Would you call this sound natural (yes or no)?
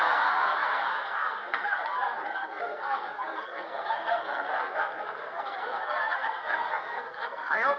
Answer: no